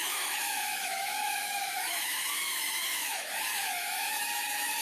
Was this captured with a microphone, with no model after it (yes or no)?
no